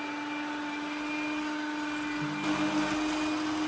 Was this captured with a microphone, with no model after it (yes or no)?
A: yes